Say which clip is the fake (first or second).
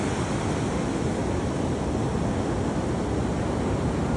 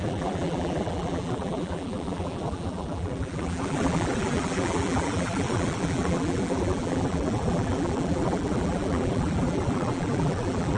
second